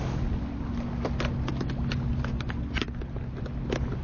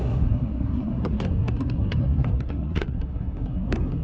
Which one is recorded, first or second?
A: first